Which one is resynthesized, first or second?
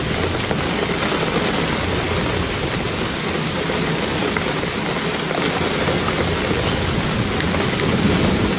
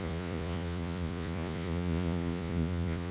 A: second